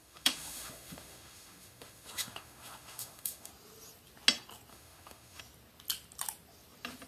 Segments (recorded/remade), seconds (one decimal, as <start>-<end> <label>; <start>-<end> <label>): 0.0-3.5 remade; 3.5-4.7 recorded; 4.7-5.4 remade; 5.4-7.1 recorded